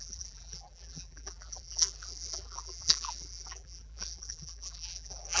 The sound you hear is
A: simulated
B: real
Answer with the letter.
A